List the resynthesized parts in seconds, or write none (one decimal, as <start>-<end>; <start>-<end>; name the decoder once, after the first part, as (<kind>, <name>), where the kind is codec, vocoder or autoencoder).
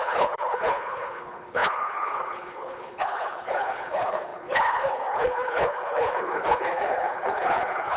0.0-8.0 (codec, HILCodec)